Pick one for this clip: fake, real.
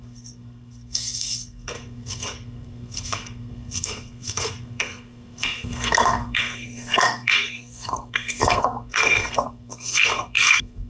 fake